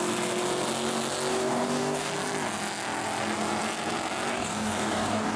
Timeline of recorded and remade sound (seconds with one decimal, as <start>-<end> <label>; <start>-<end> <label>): 0.0-1.3 recorded; 1.3-2.1 remade; 2.1-4.3 recorded; 4.3-5.4 remade